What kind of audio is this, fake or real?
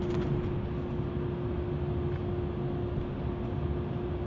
real